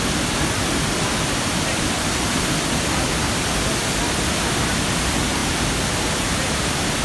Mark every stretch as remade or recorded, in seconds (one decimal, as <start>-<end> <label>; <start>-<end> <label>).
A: 0.0-7.0 remade